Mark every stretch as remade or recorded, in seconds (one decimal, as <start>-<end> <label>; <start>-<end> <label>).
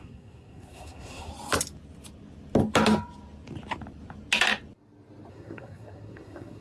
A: 0.0-1.3 remade; 1.3-5.3 recorded; 5.3-6.6 remade